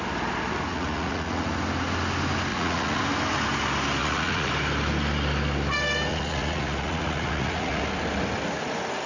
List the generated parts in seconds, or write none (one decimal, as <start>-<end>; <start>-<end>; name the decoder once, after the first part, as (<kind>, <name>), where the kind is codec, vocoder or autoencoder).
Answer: 0.7-1.5 (vocoder, Vocos); 2.5-3.0; 4.0-4.5; 6.1-7.8